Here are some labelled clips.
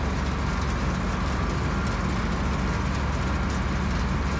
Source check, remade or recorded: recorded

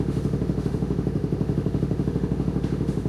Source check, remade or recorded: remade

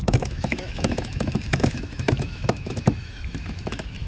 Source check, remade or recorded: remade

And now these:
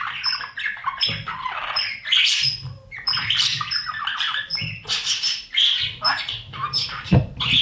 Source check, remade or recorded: recorded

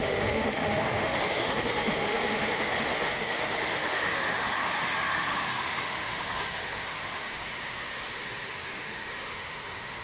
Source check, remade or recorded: remade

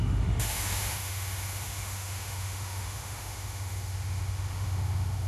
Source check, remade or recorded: remade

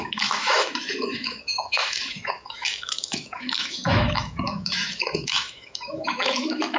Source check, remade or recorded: remade